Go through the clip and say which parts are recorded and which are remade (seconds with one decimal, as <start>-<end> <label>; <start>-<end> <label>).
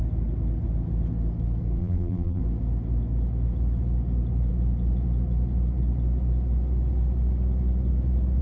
0.0-1.8 recorded; 1.8-2.4 remade; 2.4-8.4 recorded